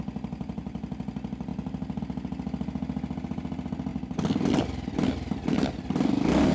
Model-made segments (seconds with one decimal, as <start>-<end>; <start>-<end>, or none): none